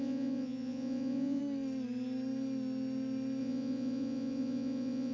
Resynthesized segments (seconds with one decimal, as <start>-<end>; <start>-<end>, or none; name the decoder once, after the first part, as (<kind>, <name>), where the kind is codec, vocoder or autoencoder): 0.0-1.4 (vocoder, Vocos); 3.4-5.1